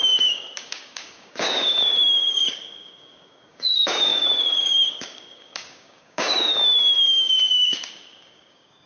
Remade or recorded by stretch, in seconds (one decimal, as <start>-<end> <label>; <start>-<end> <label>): 0.0-8.9 remade